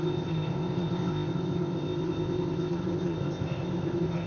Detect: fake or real fake